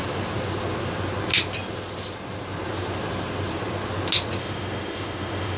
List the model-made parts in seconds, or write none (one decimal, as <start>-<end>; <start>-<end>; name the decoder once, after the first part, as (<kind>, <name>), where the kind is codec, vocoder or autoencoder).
4.4-5.6 (autoencoder, DAC-VAE)